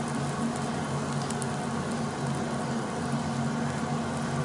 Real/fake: real